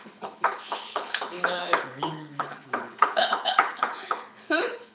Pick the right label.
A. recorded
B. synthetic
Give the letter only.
B